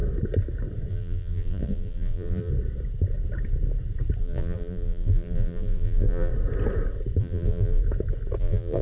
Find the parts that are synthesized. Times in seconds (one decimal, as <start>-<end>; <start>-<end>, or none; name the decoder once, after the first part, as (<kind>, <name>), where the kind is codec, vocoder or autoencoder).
0.9-2.5 (vocoder, BigVGAN v2); 4.2-6.3; 7.2-7.8; 8.4-8.8